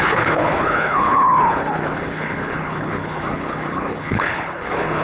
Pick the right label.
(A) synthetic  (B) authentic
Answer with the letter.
A